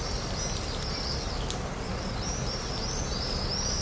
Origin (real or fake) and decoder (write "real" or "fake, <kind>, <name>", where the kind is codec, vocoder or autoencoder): real